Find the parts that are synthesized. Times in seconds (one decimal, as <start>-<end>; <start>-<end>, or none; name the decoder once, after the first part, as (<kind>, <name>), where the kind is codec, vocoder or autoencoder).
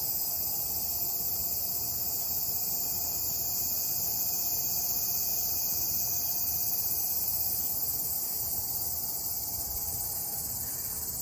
5.3-6.1 (vocoder, BigVGAN v2); 8.6-10.3